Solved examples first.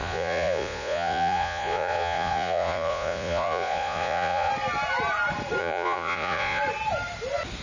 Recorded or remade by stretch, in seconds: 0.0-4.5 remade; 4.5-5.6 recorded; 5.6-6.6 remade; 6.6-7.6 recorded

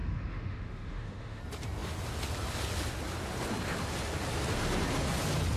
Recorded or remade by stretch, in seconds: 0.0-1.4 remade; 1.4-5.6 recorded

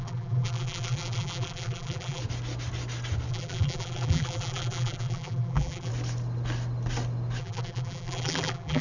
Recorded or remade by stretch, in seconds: 0.0-2.2 remade; 2.2-3.3 recorded; 3.3-5.9 remade; 5.9-7.4 recorded; 7.4-8.8 remade

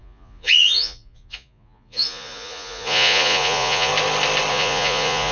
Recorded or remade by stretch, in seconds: 0.0-3.9 remade; 3.9-4.5 recorded; 4.5-5.3 remade

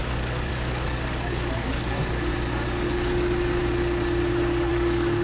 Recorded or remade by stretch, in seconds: 0.0-2.3 remade; 2.3-2.9 recorded; 2.9-3.6 remade; 3.6-4.7 recorded; 4.7-5.2 remade